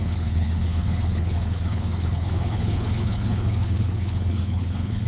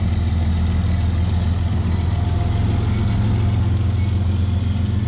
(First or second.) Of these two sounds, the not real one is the first